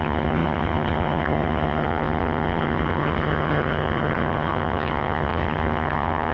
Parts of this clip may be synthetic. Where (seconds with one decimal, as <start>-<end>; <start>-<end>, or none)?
0.0-6.3